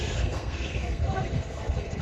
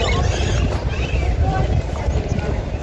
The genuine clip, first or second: second